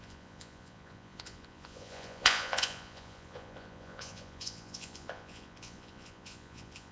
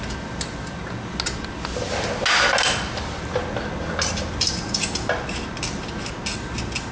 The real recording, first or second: second